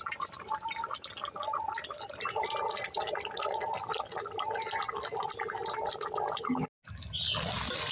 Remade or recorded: recorded